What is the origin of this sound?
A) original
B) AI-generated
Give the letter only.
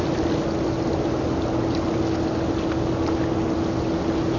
A